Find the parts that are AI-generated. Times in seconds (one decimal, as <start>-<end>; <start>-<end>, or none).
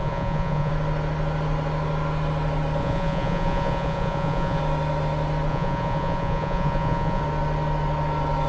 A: 0.0-0.7; 2.8-4.6; 5.5-7.2